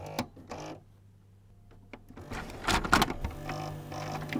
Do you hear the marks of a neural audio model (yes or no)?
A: no